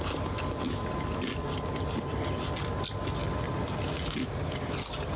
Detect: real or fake real